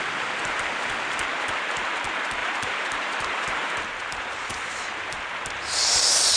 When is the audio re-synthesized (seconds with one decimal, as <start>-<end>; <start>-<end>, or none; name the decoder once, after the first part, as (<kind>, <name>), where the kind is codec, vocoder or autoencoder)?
1.3-1.9 (vocoder, BigVGAN v2); 2.4-5.3